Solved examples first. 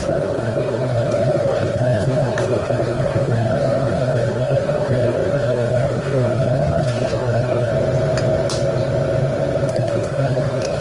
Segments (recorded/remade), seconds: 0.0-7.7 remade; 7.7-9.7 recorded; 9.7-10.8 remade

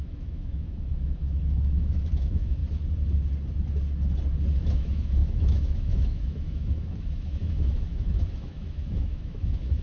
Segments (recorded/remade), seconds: 0.0-2.6 remade; 2.6-4.6 recorded; 4.6-9.8 remade

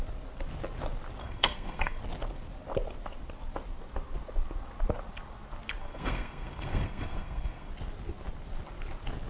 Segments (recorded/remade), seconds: 0.0-1.2 recorded; 1.2-2.0 remade; 2.0-5.8 recorded; 5.8-7.7 remade; 7.7-9.3 recorded

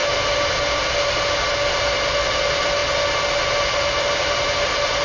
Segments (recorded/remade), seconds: 0.0-5.0 recorded